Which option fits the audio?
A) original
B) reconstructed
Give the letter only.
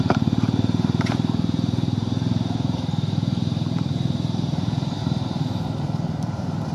B